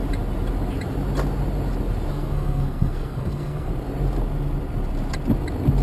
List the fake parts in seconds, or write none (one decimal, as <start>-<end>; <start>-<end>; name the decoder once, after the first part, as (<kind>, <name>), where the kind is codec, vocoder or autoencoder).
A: 2.1-3.7 (codec, SNAC)